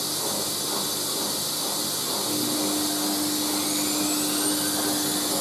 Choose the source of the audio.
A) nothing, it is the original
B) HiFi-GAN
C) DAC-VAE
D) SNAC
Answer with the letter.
A